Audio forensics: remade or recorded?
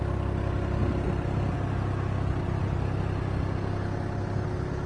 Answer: recorded